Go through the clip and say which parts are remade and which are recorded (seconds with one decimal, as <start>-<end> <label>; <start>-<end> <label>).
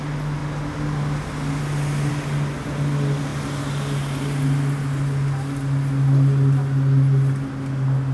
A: 0.0-8.1 recorded